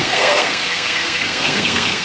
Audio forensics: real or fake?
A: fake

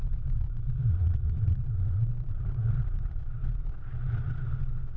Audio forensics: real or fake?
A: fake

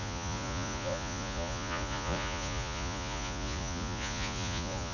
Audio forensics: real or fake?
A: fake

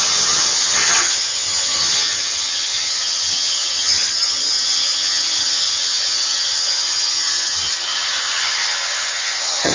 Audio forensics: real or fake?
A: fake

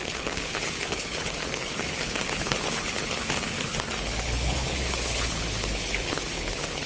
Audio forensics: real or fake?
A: fake